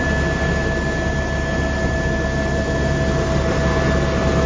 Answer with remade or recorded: recorded